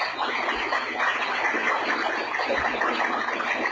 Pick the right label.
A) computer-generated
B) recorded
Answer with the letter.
B